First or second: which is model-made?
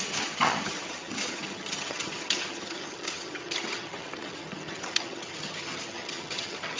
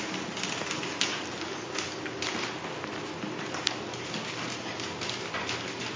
first